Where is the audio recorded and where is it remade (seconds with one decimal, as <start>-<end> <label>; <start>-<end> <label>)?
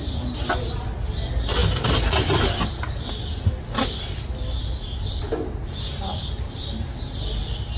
0.0-7.8 recorded